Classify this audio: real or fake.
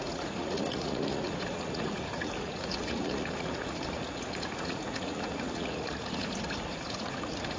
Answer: fake